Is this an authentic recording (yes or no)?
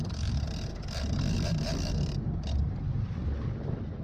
yes